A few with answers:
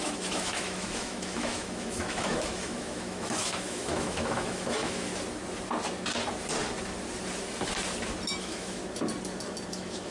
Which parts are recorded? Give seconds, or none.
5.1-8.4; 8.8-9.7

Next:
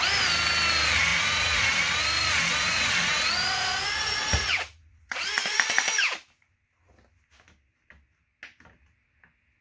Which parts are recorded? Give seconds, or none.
0.0-1.1; 2.0-2.6; 5.9-9.6

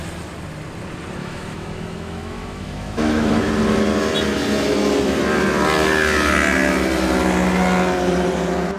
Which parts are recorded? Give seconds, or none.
0.0-1.2; 3.4-8.8

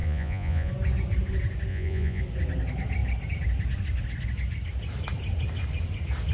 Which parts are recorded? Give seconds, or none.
0.7-1.7; 2.2-6.3

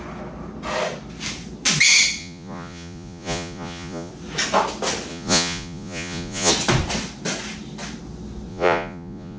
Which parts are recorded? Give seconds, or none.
0.0-2.2; 4.1-5.1; 6.5-8.5

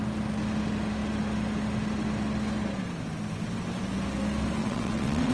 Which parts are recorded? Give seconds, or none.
0.0-4.6